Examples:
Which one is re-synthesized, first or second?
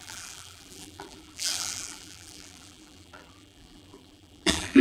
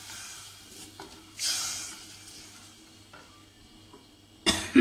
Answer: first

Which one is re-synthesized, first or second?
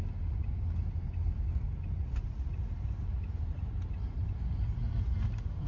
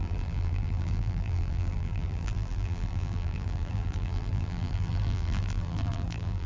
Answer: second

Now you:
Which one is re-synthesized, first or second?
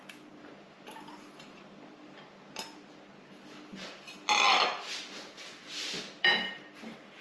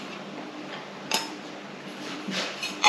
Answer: second